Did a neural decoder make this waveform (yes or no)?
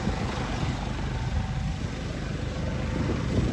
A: no